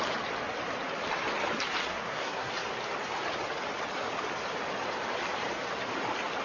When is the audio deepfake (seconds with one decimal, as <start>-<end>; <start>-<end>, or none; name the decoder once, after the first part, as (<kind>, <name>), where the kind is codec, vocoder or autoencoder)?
1.9-2.5 (codec, SNAC)